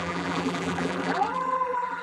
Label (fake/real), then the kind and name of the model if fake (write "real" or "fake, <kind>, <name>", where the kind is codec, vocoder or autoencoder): fake, vocoder, BigVGAN v2